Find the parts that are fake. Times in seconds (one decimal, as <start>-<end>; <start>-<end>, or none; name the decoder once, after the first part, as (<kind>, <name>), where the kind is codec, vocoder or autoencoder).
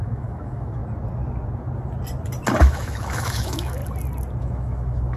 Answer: 0.0-0.8 (autoencoder, DAC-VAE); 2.6-3.8; 4.4-5.2